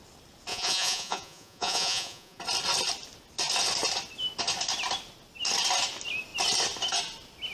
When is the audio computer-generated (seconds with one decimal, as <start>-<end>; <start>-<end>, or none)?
0.5-2.4